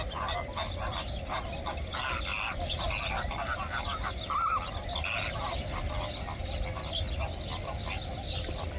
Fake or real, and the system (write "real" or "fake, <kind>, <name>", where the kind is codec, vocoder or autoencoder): real